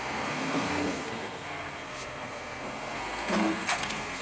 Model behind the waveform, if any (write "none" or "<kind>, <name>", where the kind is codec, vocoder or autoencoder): codec, SNAC